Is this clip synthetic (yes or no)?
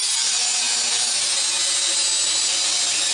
no